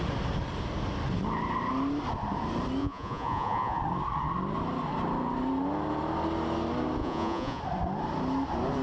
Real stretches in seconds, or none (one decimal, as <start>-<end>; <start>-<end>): 0.0-2.8; 3.8-7.0; 7.6-8.8